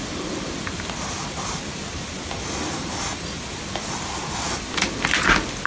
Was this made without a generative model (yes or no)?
yes